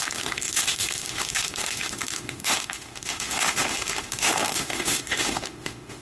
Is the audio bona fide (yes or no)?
no